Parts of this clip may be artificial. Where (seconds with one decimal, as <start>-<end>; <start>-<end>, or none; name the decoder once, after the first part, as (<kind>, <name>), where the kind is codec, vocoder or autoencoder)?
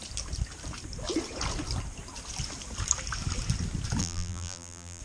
4.0-5.0 (vocoder, BigVGAN v2)